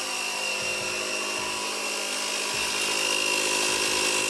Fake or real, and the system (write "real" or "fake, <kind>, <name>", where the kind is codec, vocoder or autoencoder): real